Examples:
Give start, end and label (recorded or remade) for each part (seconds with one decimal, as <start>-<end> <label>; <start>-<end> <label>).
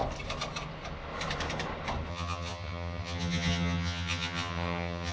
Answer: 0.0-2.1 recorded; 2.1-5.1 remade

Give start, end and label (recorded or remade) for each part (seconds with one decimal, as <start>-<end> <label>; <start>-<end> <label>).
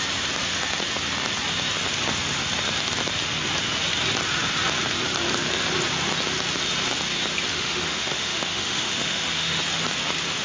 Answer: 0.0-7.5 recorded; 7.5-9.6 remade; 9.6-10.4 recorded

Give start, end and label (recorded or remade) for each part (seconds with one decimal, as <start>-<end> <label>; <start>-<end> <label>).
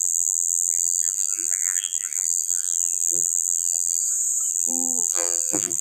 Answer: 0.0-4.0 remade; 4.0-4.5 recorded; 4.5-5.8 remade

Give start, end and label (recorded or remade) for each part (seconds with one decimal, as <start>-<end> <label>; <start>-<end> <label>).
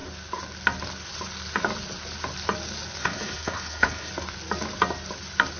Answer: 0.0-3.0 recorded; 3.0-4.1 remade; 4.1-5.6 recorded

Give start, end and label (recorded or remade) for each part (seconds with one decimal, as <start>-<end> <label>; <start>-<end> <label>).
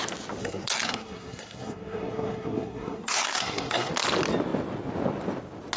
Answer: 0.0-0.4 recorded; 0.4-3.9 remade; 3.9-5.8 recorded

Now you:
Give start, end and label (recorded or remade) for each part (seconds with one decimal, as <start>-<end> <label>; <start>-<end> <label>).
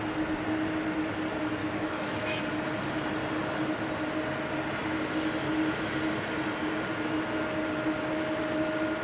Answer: 0.0-1.6 recorded; 1.6-2.4 remade; 2.4-9.0 recorded